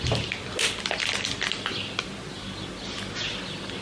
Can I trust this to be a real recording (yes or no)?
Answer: yes